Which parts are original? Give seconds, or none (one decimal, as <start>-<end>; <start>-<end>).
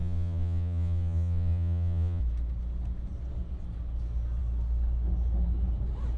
2.2-6.2